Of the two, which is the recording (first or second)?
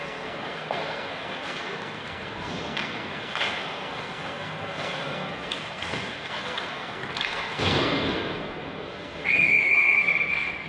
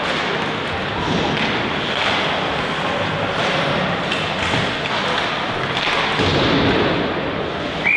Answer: second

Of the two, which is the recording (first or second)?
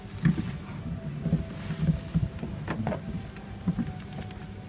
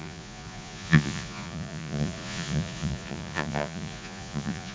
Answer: first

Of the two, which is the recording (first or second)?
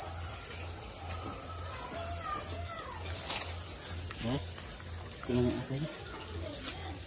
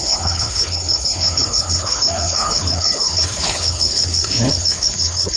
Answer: first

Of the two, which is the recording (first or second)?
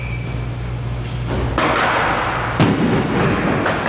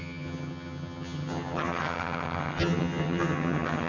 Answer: first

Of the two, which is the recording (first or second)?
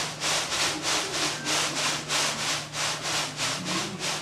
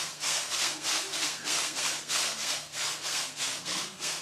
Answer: first